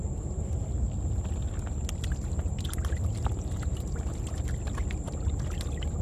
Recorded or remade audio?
recorded